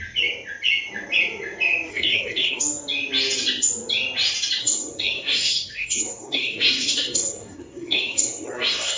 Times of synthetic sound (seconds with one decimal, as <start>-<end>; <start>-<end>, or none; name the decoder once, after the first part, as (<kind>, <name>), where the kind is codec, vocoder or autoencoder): 1.9-2.6 (codec, SNAC); 4.6-9.0